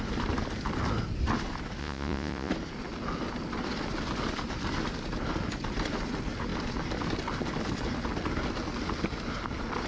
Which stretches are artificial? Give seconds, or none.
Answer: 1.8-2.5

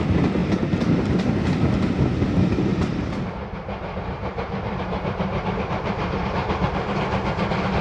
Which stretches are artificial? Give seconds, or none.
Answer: 2.7-6.5

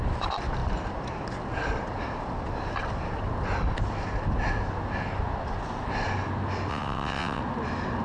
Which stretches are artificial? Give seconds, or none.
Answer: 6.7-7.4

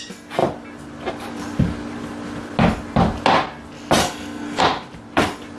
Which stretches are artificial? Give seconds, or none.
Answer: 4.0-4.6